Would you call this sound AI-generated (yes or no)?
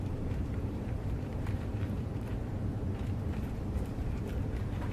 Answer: yes